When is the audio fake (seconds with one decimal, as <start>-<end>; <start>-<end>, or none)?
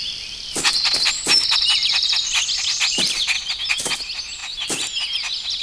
1.8-3.3; 4.4-5.6